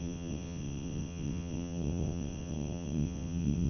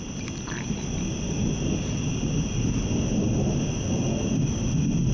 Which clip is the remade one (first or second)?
first